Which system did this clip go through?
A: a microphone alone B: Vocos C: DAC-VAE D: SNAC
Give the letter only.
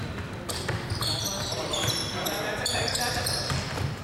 A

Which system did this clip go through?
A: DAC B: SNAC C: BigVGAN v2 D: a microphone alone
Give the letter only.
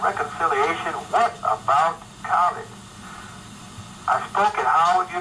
D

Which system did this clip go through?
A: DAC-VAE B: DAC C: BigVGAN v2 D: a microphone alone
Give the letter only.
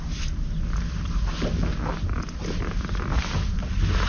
D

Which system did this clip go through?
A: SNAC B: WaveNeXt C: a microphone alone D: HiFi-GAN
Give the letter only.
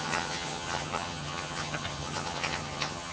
D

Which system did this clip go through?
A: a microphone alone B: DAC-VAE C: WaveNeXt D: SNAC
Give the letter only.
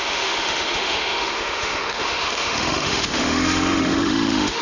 B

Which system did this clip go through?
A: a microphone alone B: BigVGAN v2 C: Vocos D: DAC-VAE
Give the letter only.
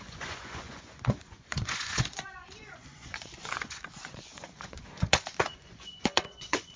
C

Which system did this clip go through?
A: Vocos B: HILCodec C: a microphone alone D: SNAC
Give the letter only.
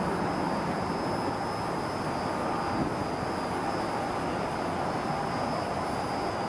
C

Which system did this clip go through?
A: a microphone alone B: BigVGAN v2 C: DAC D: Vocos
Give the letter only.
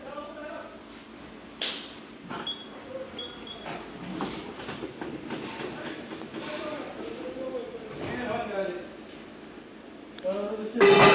A